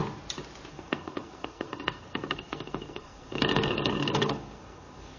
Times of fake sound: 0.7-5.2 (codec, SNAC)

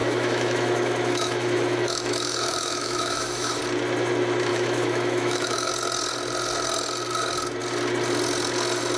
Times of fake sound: 0.0-3.6 (autoencoder, DAC-VAE); 4.5-5.7